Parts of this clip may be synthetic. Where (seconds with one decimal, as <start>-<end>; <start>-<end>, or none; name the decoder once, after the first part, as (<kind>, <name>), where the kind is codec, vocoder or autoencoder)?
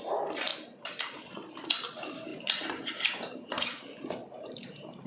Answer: 0.0-5.1 (vocoder, BigVGAN v2)